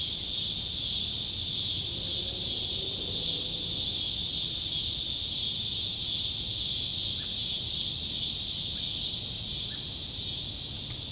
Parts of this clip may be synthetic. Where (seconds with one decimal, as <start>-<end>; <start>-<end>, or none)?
none